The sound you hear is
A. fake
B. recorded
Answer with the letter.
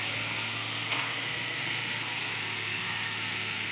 A